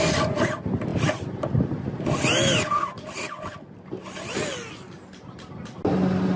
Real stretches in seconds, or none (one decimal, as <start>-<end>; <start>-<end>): 0.0-6.4